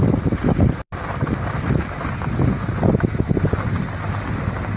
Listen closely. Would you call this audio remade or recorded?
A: recorded